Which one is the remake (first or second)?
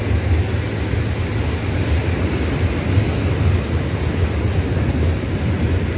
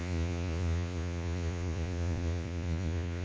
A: second